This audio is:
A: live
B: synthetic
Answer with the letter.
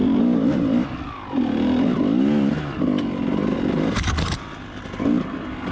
A